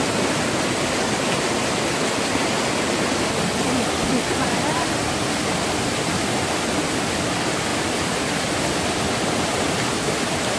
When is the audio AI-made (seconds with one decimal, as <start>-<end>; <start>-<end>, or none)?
none

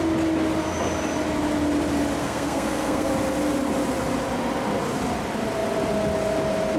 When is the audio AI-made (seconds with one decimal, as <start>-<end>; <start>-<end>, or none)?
2.2-3.1